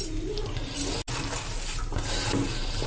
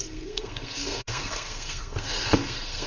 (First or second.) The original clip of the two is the first